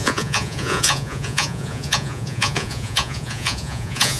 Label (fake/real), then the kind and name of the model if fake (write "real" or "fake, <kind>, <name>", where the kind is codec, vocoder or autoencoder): fake, vocoder, Vocos